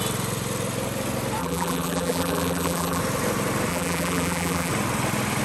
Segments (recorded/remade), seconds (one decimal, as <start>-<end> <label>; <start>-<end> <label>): 0.0-1.4 recorded; 1.4-3.0 remade; 3.0-3.7 recorded; 3.7-4.7 remade; 4.7-5.4 recorded